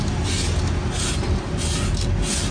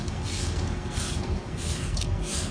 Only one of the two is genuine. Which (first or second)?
first